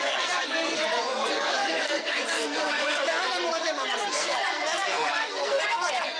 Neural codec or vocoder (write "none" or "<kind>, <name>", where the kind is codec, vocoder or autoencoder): codec, SNAC